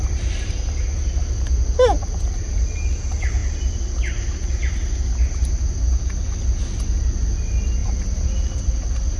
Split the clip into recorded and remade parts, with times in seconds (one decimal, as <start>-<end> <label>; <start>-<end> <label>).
0.0-9.2 recorded